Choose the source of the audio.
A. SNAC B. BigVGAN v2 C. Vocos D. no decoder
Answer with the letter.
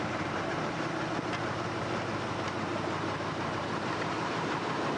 B